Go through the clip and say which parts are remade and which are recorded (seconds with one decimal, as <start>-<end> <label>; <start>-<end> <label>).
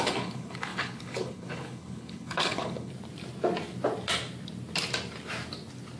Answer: 0.0-2.9 remade; 2.9-6.0 recorded